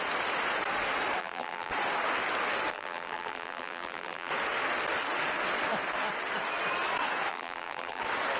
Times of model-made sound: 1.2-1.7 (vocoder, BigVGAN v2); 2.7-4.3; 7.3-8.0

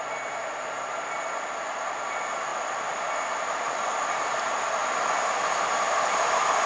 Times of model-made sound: none

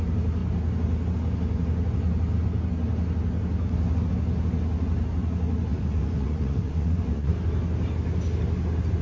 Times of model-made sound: 5.7-7.3 (vocoder, Vocos)

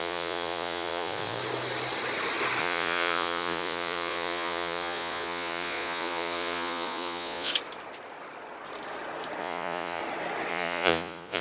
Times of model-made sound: 0.0-1.4 (vocoder, Vocos); 2.6-7.5; 9.4-10.0; 10.5-11.4

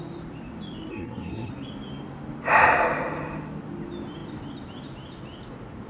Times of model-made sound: 0.9-1.5 (codec, SNAC)

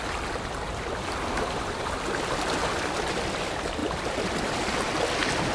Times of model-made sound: 3.8-4.9 (vocoder, BigVGAN v2)

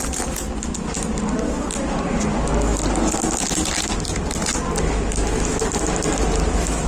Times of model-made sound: none

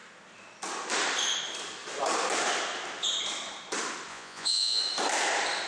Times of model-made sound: 4.1-4.8 (vocoder, Vocos)